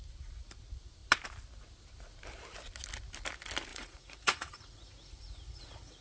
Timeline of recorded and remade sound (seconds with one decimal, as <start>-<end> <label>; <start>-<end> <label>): 0.0-3.7 recorded; 3.7-6.0 remade